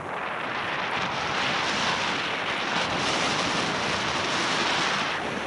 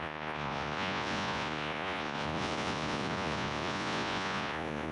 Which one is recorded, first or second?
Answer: first